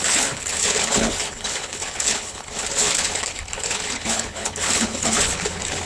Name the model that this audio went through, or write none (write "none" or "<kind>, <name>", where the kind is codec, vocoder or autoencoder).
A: codec, HILCodec